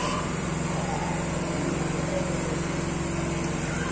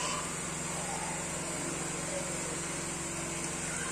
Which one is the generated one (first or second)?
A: first